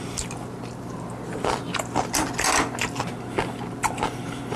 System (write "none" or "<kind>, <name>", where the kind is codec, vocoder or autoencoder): none